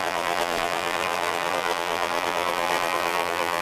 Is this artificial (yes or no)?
yes